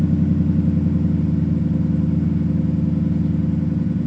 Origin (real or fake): real